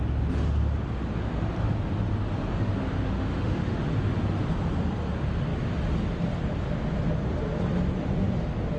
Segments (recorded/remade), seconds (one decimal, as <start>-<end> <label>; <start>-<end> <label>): 0.0-2.8 recorded; 2.8-3.8 remade; 3.8-8.8 recorded